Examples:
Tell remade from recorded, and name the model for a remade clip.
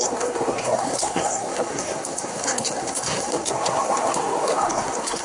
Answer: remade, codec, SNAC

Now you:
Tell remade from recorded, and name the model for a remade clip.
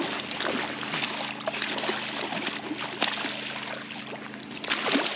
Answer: recorded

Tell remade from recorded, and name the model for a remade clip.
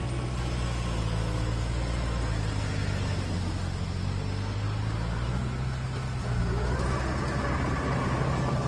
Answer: recorded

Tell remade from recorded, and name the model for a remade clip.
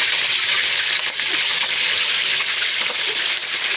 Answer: recorded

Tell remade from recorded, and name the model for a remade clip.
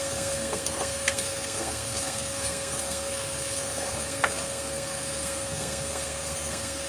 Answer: remade, codec, SNAC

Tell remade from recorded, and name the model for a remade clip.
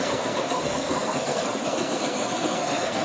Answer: remade, codec, SNAC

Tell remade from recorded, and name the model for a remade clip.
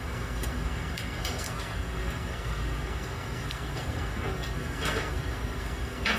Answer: remade, codec, SNAC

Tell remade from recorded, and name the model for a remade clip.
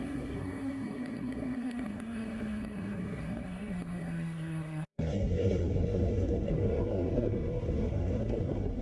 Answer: remade, codec, SNAC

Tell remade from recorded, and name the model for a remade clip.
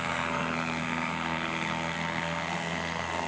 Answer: remade, codec, SNAC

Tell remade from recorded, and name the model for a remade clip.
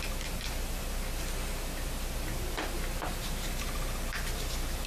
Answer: recorded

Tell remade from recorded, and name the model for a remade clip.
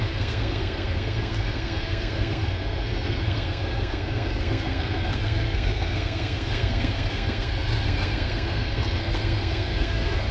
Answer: remade, codec, SNAC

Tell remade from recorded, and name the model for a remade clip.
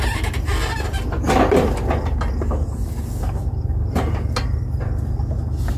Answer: recorded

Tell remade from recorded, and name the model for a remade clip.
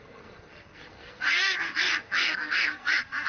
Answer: remade, codec, SNAC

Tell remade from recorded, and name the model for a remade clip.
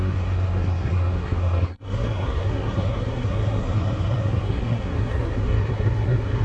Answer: remade, codec, SNAC